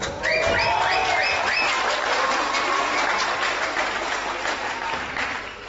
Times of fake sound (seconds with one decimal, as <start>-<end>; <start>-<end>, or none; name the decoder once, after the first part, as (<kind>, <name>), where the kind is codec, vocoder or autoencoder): none